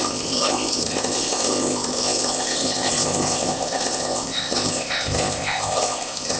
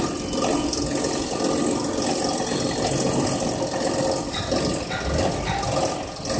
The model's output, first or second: first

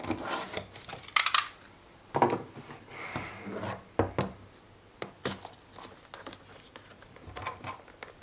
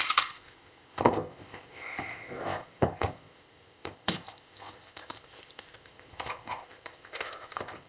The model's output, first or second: second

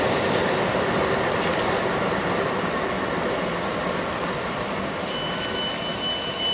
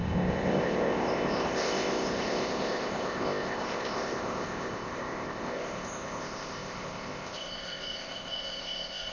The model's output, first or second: second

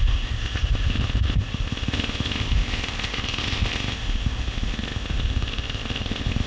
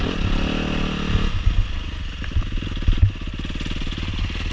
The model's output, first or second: first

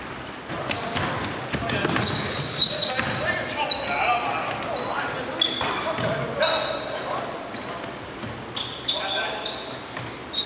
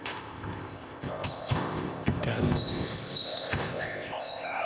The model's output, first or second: second